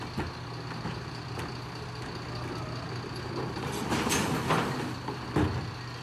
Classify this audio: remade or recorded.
recorded